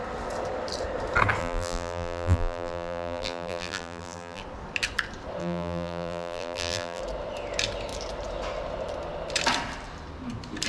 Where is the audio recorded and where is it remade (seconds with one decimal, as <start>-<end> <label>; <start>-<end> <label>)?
0.0-1.4 recorded; 1.4-4.4 remade; 4.4-5.4 recorded; 5.4-7.0 remade; 7.0-10.7 recorded

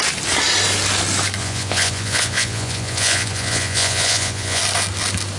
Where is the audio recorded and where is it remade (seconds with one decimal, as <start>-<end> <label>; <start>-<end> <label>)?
0.0-1.4 recorded; 1.4-4.6 remade; 4.6-5.4 recorded

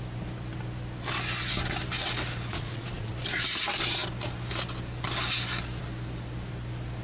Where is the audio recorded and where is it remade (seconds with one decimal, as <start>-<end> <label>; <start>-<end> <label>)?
0.0-2.5 recorded; 2.5-3.1 remade; 3.1-7.0 recorded

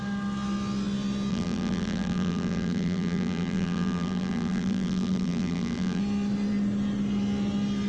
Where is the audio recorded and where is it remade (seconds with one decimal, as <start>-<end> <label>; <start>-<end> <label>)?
0.0-1.3 recorded; 1.3-6.0 remade; 6.0-7.9 recorded

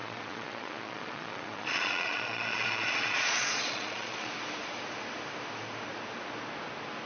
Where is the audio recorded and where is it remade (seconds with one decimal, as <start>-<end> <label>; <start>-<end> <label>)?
0.0-4.3 remade; 4.3-7.1 recorded

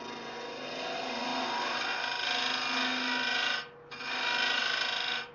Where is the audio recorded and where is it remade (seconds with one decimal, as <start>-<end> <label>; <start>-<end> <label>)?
0.0-5.3 recorded

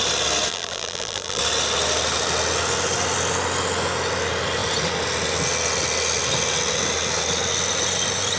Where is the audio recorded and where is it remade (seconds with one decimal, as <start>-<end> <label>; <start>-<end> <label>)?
0.0-0.5 recorded; 0.5-1.4 remade; 1.4-8.4 recorded